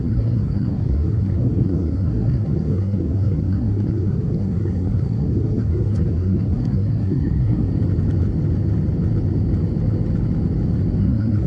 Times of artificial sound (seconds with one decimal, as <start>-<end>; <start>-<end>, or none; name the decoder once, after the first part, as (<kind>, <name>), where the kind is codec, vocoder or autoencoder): 0.0-7.7 (codec, SNAC); 11.0-11.5